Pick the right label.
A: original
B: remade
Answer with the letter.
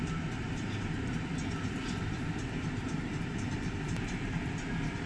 B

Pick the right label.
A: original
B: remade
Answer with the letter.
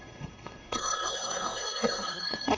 B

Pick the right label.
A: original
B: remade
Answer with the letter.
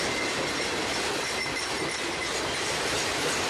A